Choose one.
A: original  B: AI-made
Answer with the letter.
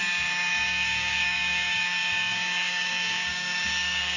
B